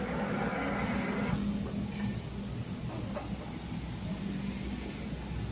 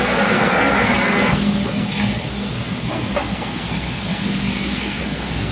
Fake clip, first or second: second